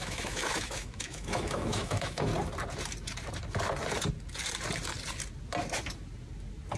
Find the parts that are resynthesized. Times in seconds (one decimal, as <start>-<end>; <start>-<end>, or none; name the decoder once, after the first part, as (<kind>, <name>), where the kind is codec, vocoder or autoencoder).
0.0-2.3 (autoencoder, DAC-VAE)

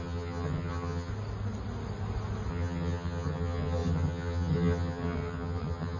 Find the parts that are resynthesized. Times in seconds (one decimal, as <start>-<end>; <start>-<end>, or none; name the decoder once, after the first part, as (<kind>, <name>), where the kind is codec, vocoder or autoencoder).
0.0-1.1 (vocoder, HiFi-GAN); 2.5-6.0

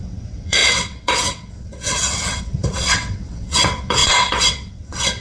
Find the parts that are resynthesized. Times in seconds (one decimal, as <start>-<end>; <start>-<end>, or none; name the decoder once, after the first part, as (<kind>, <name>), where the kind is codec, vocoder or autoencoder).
0.0-5.2 (vocoder, WaveNeXt)